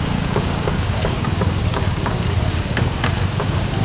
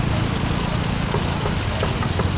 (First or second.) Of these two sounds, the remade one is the first